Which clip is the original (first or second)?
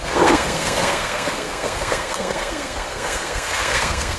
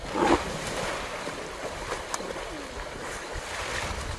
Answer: second